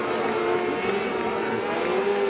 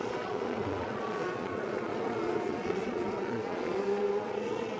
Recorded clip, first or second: first